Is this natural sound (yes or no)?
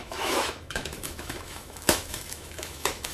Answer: no